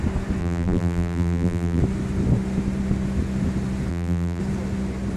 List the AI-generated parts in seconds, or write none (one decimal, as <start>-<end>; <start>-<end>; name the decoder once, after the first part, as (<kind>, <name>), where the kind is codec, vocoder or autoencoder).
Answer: 0.4-1.8 (vocoder, BigVGAN v2); 3.9-4.4

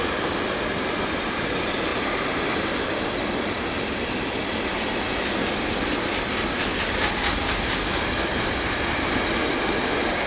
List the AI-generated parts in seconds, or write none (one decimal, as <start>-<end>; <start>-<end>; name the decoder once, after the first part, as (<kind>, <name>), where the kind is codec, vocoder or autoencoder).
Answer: 8.3-9.3 (vocoder, BigVGAN v2)

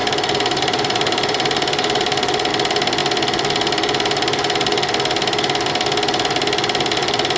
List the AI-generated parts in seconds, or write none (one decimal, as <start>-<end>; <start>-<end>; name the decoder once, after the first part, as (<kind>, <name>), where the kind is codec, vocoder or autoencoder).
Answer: 0.0-2.5 (vocoder, BigVGAN v2)

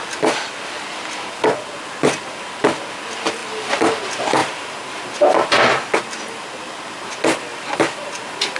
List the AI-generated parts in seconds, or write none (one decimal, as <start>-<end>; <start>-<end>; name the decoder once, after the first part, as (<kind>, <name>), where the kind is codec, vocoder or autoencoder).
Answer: 4.4-6.0 (vocoder, BigVGAN v2); 7.5-8.6

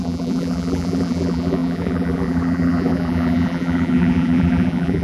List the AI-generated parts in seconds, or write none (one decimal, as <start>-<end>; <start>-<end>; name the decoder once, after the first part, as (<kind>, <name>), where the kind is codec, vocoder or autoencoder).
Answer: 0.0-5.0 (vocoder, BigVGAN v2)

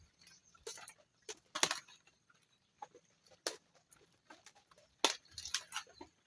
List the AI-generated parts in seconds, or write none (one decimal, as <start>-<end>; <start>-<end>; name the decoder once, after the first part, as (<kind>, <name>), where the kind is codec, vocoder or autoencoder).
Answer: none